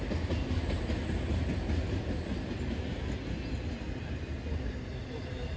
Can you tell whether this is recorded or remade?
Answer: recorded